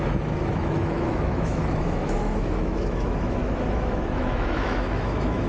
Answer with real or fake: fake